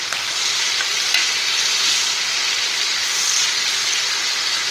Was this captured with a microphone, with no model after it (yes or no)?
yes